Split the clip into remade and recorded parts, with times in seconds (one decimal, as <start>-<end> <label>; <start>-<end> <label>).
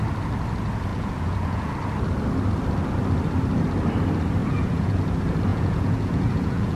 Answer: 0.0-0.9 recorded; 0.9-1.7 remade; 1.7-4.4 recorded; 4.4-5.0 remade; 5.0-5.5 recorded; 5.5-6.8 remade